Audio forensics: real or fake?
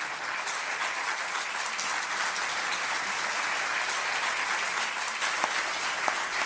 real